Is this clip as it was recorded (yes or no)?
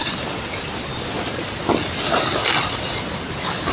yes